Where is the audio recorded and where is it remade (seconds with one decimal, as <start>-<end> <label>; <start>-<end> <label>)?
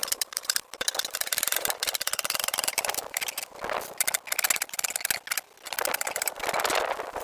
0.0-4.0 remade; 4.0-7.2 recorded